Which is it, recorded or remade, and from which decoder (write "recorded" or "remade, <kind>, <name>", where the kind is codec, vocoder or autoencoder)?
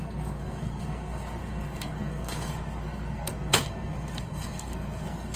remade, codec, SNAC